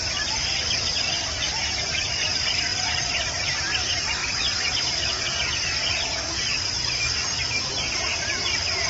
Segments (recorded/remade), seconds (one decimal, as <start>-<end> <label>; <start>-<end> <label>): 0.0-4.2 remade; 4.2-7.7 recorded; 7.7-8.9 remade